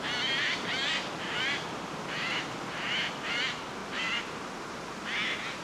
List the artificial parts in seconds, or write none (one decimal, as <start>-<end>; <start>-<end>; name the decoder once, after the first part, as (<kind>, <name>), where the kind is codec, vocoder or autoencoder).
3.8-4.4 (vocoder, BigVGAN v2)